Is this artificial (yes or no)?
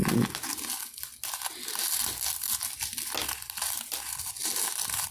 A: no